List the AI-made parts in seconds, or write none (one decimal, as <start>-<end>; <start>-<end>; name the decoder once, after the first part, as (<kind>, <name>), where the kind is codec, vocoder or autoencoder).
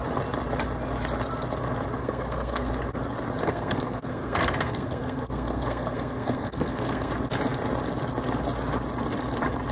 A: 2.0-2.7 (codec, SNAC); 3.4-7.1